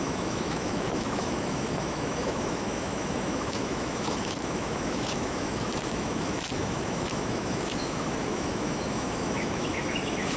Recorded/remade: remade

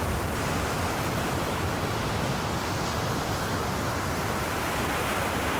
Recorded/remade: recorded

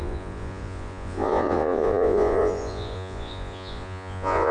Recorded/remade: remade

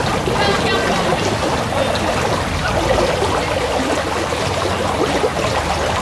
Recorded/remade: recorded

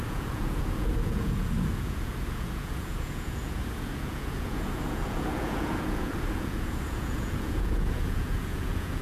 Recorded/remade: remade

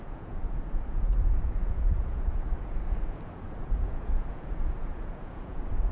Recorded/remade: remade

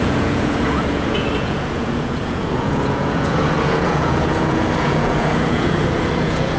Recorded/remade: remade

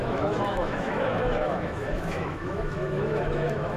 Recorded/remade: remade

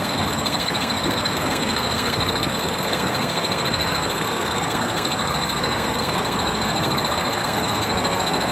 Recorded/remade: remade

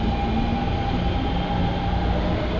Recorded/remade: recorded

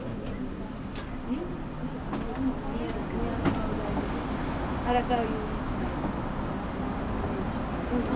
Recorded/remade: recorded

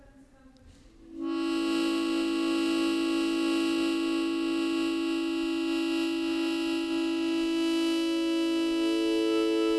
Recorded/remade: recorded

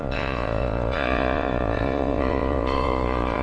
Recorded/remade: remade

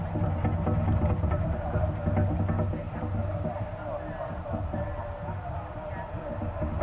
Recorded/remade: recorded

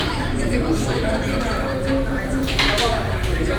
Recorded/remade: remade